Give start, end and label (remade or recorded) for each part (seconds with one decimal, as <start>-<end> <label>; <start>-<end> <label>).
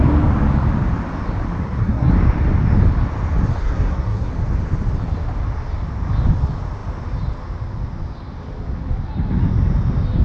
0.0-1.6 recorded; 1.6-2.1 remade; 2.1-3.6 recorded; 3.6-4.3 remade; 4.3-10.2 recorded